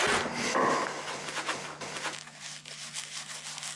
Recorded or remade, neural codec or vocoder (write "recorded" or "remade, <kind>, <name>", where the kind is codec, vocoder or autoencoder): recorded